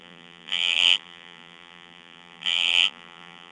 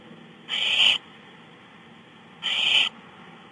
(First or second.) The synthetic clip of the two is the first